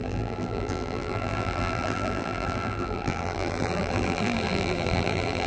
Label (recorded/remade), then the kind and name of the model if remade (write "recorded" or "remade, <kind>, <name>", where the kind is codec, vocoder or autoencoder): remade, vocoder, BigVGAN v2